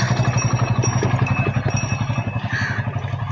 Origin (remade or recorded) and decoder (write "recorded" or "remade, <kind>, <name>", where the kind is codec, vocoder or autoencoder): recorded